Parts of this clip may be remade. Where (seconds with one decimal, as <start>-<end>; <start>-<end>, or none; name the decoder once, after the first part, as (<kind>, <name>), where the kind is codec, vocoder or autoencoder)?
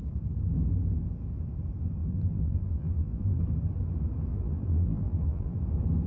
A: 2.0-3.4 (vocoder, BigVGAN v2); 4.3-5.6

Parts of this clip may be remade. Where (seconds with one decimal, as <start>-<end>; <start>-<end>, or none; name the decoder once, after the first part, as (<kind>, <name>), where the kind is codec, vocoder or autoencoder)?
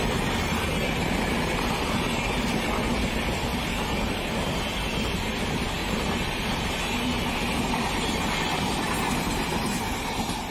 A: 5.8-6.6 (vocoder, BigVGAN v2)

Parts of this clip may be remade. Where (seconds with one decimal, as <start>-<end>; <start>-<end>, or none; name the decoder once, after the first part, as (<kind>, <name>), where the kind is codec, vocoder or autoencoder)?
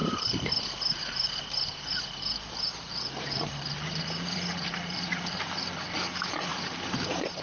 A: 0.0-0.5 (vocoder, BigVGAN v2); 1.0-5.4; 6.5-7.4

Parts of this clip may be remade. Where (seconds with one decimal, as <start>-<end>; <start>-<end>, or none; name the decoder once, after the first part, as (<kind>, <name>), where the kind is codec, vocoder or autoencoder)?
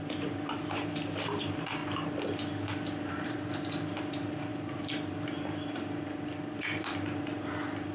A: 0.0-1.8 (vocoder, BigVGAN v2); 3.1-7.9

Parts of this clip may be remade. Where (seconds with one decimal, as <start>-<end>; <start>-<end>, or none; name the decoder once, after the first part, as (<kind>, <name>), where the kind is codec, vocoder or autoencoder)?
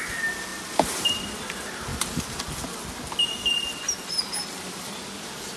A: 0.5-1.3 (vocoder, BigVGAN v2)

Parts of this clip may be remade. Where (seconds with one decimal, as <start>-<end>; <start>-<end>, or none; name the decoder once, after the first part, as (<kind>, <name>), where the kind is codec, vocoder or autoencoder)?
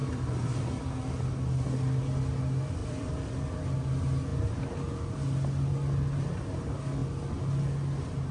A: 0.0-0.9 (vocoder, BigVGAN v2); 2.8-3.6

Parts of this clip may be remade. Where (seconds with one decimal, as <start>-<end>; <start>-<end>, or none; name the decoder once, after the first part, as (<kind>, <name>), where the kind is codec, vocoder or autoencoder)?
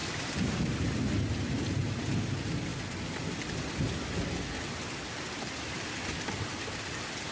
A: 0.0-0.9 (vocoder, BigVGAN v2)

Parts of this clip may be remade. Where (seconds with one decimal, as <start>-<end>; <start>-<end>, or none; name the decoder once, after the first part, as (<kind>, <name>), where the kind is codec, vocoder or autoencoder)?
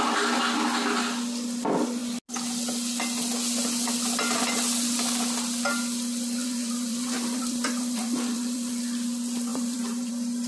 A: 6.4-8.7 (vocoder, BigVGAN v2); 9.5-10.1